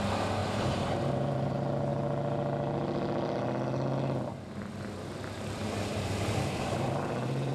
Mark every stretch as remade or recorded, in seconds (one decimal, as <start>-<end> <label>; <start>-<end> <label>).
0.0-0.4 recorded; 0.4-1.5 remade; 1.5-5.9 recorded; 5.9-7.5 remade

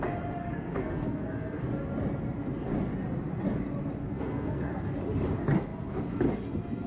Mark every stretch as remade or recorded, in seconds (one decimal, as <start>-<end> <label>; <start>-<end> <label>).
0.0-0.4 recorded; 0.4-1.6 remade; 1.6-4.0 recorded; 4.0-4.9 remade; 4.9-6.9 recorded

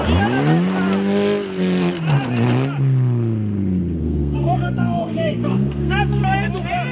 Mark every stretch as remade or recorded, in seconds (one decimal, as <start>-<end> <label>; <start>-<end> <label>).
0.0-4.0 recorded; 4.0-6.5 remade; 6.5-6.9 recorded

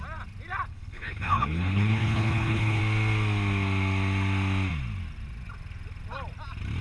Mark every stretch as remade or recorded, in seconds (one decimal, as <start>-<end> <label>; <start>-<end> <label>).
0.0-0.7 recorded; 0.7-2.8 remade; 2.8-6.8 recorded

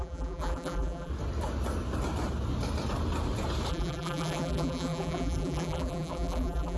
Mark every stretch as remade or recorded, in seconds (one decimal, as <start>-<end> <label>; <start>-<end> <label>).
0.0-1.1 remade; 1.1-3.7 recorded; 3.7-6.8 remade

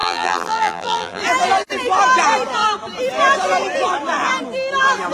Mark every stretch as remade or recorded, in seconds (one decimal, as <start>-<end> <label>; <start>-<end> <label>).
0.0-1.2 remade; 1.2-5.1 recorded